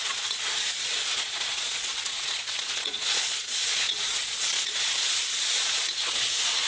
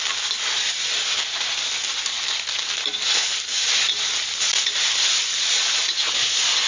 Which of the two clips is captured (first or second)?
second